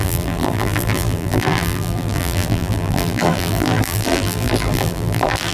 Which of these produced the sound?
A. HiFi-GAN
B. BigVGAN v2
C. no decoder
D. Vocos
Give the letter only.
B